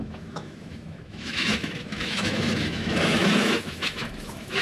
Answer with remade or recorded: remade